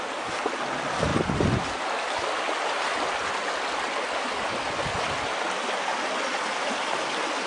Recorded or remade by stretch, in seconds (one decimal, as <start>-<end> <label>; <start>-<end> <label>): 0.0-7.5 recorded